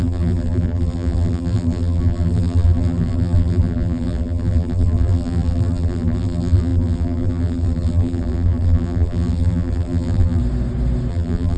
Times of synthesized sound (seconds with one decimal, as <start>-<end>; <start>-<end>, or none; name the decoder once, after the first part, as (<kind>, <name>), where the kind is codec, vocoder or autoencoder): 0.0-10.4 (vocoder, BigVGAN v2); 11.1-11.6